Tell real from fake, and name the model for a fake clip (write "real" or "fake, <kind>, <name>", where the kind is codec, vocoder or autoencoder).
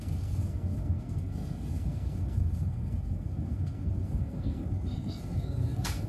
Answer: fake, codec, SNAC